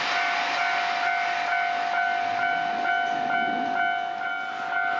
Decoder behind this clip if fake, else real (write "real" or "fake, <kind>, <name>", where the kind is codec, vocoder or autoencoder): real